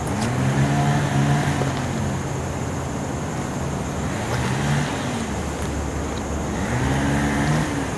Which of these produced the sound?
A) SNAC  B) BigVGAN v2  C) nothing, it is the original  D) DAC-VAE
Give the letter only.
C